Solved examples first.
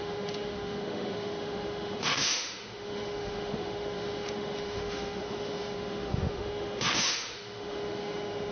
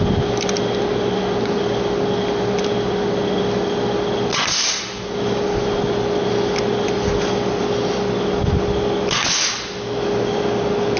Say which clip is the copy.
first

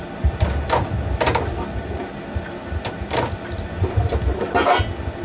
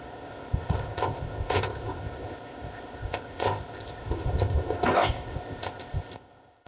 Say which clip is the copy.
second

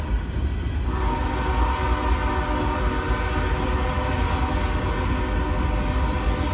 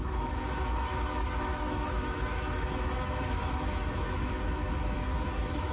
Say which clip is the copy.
second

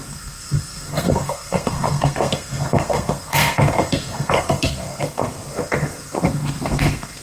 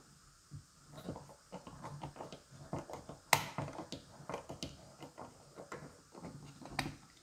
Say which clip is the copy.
first